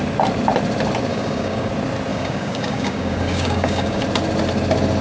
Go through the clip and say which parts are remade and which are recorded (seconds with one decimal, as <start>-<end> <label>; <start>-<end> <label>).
0.0-1.1 recorded; 1.1-1.7 remade; 1.7-2.1 recorded; 2.1-4.0 remade; 4.0-5.0 recorded